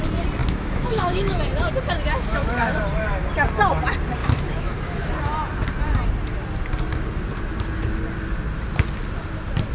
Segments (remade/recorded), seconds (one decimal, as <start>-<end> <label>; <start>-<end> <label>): 0.0-0.4 recorded; 0.4-1.4 remade; 1.4-2.3 recorded; 2.3-2.8 remade; 2.8-4.2 recorded; 4.2-5.1 remade; 5.1-9.7 recorded